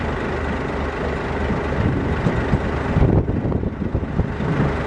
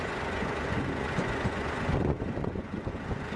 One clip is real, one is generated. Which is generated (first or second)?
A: second